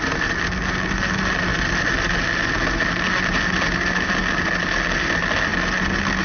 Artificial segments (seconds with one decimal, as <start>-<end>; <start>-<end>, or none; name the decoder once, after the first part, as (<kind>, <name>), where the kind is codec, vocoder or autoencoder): none